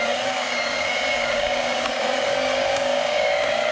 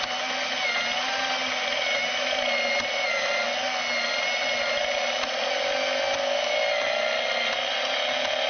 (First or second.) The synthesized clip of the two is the first